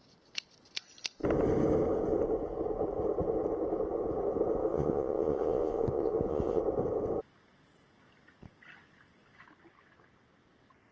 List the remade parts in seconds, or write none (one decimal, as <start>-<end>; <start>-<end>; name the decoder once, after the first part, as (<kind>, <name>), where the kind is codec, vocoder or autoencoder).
4.7-6.6 (vocoder, Vocos)